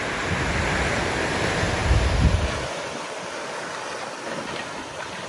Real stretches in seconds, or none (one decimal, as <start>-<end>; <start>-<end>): 0.0-5.3